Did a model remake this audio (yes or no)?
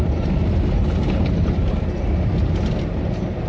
no